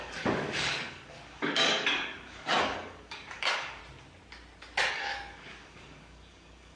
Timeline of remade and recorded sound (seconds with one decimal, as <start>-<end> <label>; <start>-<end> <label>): 0.0-3.8 remade; 3.8-4.9 recorded; 4.9-6.8 remade